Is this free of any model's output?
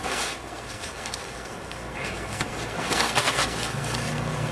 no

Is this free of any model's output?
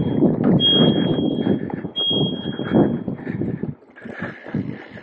yes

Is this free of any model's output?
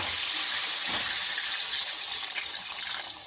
no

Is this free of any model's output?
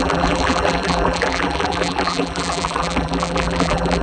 no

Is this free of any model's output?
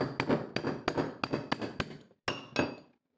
yes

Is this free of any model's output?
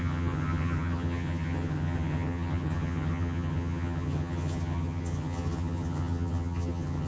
no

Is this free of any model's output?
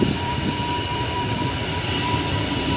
no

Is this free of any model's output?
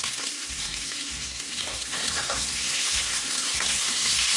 no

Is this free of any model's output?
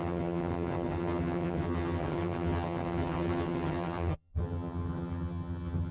no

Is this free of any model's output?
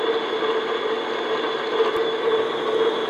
yes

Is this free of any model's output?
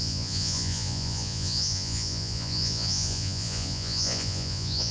no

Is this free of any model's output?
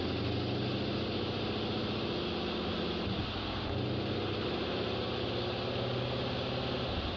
yes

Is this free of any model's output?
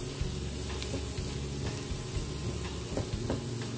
yes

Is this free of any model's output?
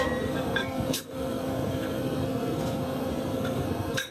no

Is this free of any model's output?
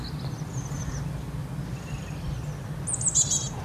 yes